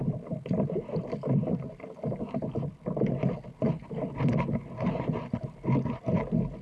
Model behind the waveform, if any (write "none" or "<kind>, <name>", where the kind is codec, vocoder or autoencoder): none